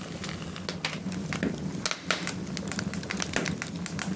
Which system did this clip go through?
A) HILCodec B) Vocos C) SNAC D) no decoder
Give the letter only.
D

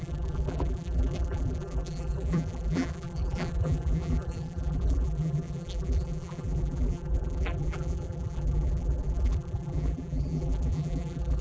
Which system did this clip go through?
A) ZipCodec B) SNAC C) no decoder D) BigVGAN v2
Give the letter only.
D